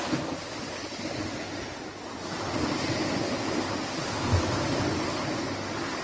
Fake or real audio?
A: real